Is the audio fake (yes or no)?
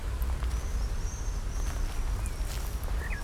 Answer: no